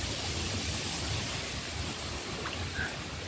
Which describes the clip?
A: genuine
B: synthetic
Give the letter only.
A